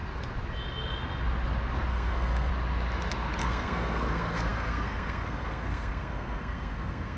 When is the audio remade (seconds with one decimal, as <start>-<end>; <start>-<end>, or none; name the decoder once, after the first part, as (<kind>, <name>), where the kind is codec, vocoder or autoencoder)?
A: 1.9-2.5 (codec, SNAC); 3.4-7.2

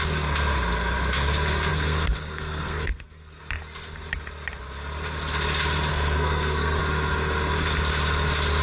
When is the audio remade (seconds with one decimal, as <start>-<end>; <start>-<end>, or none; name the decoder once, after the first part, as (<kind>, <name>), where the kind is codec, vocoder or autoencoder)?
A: 1.7-3.4 (codec, SNAC); 5.9-6.8

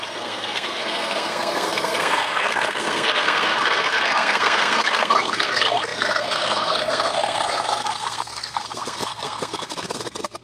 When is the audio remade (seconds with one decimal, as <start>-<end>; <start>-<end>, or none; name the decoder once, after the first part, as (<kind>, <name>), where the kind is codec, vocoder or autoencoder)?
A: 0.0-10.4 (codec, SNAC)

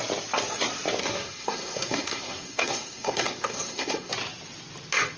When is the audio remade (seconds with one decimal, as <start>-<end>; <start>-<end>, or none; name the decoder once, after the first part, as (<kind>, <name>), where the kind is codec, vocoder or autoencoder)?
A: 1.0-4.1 (codec, SNAC)

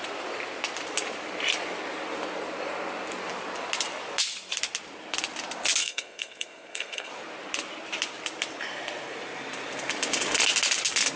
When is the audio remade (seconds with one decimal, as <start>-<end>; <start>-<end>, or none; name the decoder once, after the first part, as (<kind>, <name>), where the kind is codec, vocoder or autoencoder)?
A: 5.8-7.1 (codec, SNAC)

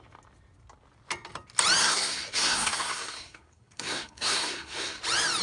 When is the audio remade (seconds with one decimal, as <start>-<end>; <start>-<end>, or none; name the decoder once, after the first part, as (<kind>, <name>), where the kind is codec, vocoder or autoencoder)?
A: 1.8-5.0 (codec, SNAC)

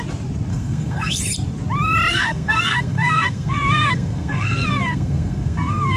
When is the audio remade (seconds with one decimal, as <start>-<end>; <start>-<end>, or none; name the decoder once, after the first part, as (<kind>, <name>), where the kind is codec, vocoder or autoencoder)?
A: 0.5-1.2 (codec, SNAC); 2.1-6.0